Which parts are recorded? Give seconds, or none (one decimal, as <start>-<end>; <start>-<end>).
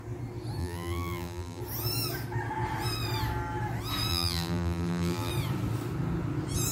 0.0-0.6; 1.6-4.1; 5.3-6.7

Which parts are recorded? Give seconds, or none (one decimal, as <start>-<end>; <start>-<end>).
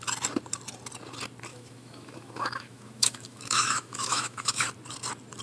0.0-1.5; 4.7-5.4